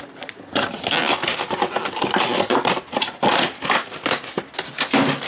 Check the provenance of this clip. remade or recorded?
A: recorded